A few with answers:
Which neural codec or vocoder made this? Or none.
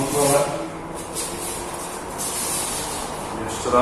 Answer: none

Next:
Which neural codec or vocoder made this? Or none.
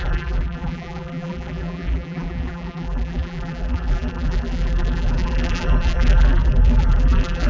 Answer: vocoder, BigVGAN v2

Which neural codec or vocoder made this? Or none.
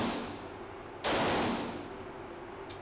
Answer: none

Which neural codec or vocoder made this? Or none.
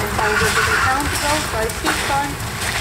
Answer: none